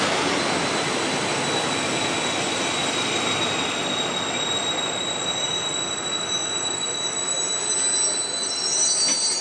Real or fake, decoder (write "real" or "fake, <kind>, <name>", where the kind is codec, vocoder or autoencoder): real